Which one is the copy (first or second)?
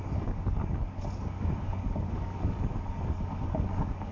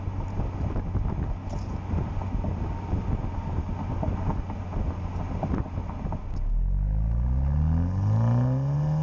first